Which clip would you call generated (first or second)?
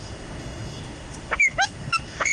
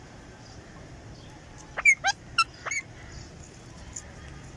first